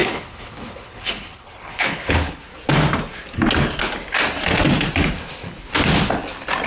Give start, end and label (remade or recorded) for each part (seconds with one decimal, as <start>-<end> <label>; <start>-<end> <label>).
0.0-2.4 remade; 2.4-6.7 recorded